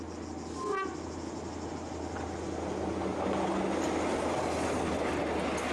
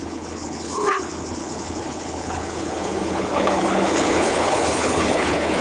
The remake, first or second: second